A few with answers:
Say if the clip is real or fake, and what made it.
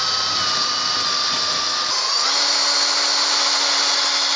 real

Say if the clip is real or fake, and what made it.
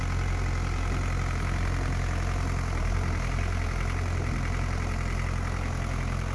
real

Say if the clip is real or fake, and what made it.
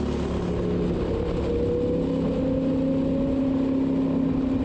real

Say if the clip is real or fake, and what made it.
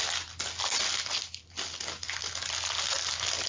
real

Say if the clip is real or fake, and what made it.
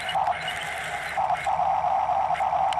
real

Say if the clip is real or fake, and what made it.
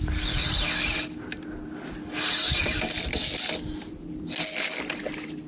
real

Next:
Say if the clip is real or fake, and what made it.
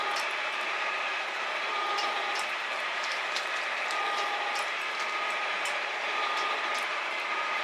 fake, vocoder, BigVGAN v2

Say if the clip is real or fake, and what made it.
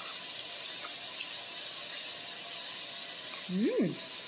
real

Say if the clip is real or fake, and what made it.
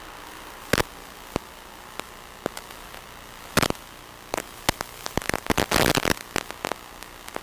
real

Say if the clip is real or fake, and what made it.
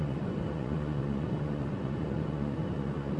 fake, vocoder, Vocos